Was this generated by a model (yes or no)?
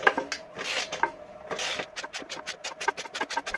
no